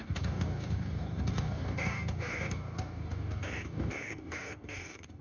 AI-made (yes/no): yes